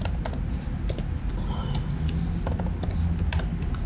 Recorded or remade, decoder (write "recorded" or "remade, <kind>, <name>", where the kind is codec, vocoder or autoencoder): recorded